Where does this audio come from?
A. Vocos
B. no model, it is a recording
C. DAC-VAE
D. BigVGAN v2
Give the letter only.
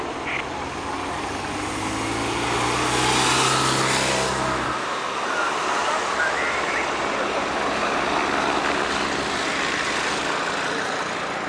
B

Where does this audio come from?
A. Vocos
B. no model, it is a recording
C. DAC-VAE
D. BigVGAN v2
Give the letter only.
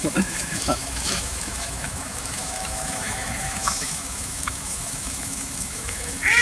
C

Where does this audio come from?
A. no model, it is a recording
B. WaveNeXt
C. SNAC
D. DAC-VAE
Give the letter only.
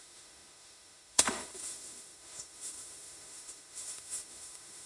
D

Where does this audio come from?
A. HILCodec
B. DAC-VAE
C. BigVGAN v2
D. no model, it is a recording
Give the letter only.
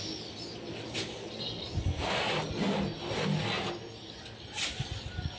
D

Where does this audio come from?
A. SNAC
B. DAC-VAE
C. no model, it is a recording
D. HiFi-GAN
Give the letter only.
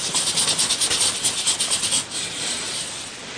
C